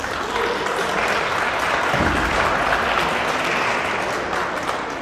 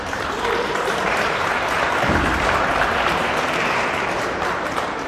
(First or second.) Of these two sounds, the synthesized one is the second